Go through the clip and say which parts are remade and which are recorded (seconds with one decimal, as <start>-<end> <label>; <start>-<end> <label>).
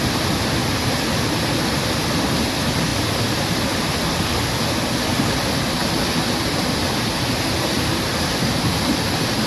0.0-0.6 recorded; 0.6-1.5 remade; 1.5-9.5 recorded